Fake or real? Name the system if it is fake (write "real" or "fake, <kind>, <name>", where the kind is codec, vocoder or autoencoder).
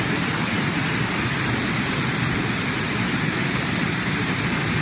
real